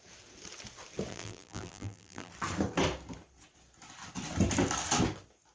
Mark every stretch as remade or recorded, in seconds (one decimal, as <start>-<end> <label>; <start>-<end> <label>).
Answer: 0.0-1.1 recorded; 1.1-2.3 remade; 2.3-5.5 recorded